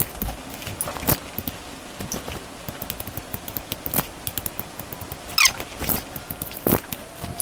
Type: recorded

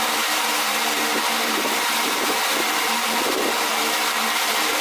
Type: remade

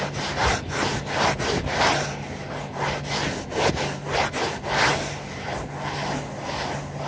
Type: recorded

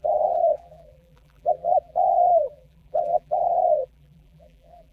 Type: remade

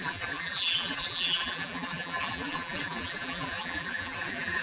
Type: remade